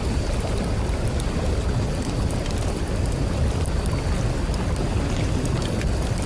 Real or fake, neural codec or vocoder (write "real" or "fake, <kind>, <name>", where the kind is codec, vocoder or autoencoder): real